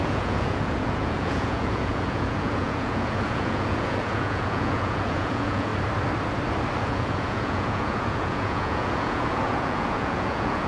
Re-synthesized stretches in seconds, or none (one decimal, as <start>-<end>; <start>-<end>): 0.0-5.7; 6.8-10.7